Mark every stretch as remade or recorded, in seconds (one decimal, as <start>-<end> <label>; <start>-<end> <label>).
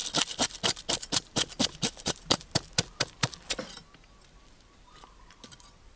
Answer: 0.0-3.6 remade; 3.6-6.0 recorded